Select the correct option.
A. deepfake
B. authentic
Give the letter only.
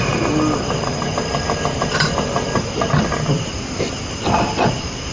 B